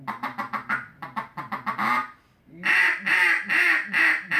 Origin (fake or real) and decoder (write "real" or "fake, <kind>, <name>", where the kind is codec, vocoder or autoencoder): real